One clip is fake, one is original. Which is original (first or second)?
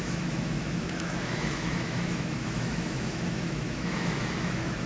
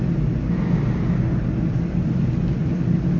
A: second